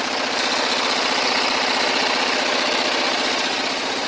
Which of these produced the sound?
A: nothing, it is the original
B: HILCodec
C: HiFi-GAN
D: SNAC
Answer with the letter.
A